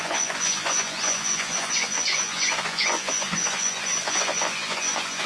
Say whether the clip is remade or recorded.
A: remade